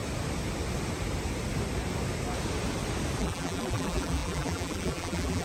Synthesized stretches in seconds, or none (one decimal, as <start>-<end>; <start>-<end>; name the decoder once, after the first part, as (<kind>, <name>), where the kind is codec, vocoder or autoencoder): 3.2-5.4 (vocoder, BigVGAN v2)